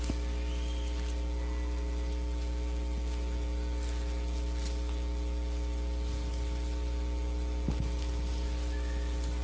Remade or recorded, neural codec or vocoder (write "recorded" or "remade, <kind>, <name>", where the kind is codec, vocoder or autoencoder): recorded